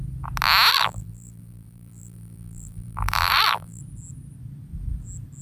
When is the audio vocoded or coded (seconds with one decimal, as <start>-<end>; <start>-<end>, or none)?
0.7-3.8